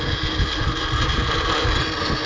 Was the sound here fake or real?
real